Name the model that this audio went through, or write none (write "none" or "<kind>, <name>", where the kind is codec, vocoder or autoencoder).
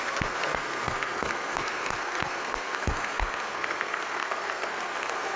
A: codec, SNAC